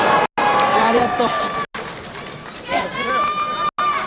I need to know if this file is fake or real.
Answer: real